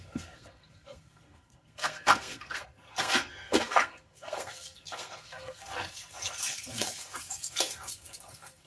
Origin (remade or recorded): remade